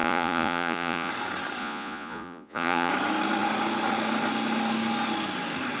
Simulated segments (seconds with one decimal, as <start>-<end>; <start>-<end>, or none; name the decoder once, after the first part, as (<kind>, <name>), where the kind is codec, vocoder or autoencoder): 0.0-1.1 (vocoder, Vocos); 1.6-2.9